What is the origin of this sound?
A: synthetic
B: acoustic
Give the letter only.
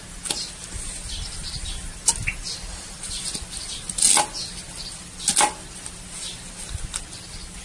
B